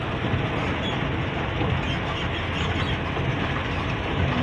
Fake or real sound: real